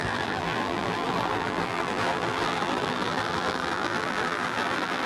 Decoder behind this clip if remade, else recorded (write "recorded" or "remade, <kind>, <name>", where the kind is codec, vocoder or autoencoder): remade, vocoder, BigVGAN v2